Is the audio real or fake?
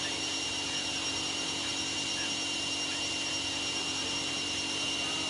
fake